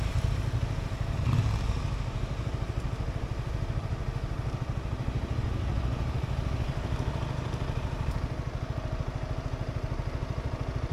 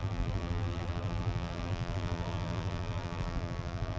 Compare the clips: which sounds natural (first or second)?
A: first